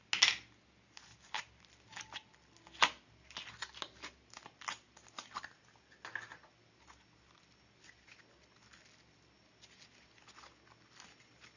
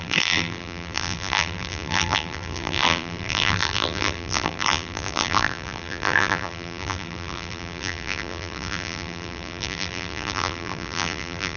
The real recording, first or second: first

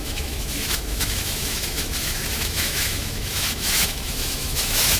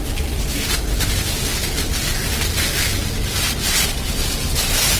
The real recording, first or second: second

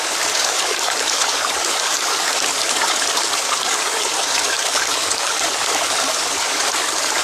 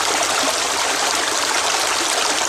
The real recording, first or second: second